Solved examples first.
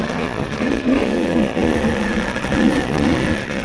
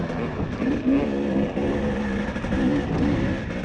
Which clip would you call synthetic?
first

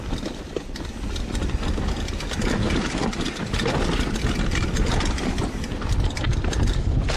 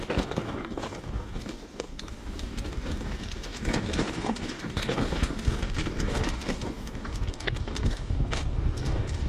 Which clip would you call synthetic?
second